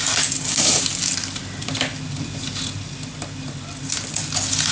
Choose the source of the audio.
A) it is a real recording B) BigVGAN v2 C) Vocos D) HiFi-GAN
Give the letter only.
A